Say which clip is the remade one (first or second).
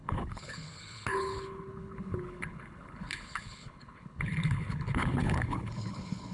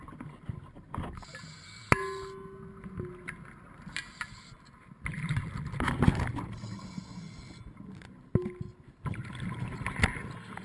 first